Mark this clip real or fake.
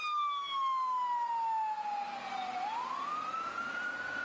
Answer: real